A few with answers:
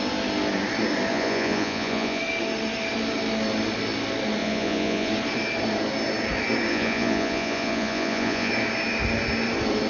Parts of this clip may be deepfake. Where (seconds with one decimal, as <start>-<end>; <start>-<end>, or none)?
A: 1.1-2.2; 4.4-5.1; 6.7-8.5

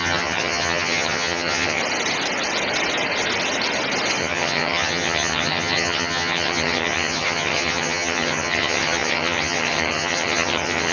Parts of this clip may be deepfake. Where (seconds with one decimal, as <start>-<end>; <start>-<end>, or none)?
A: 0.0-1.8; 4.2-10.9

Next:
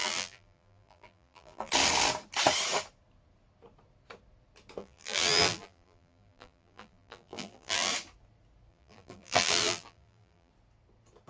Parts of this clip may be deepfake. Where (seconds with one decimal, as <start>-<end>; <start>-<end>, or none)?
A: 0.0-1.7; 4.8-7.9; 8.7-10.5

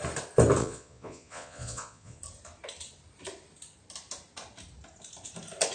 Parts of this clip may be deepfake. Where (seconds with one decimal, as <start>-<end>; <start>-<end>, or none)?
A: 0.6-2.2

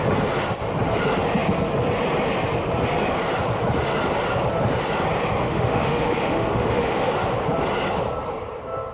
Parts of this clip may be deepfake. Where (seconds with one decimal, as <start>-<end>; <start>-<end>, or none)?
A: 5.4-7.1

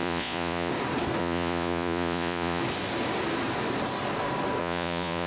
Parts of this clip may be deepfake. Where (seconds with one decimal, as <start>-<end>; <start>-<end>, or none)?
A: 0.0-0.7; 1.2-2.6; 4.6-5.3